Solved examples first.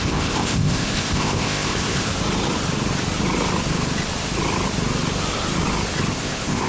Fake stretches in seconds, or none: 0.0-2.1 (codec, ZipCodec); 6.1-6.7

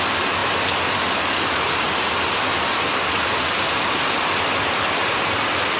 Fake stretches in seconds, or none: none